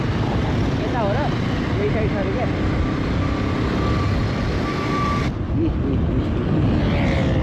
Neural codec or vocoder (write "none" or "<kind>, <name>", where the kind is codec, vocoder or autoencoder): none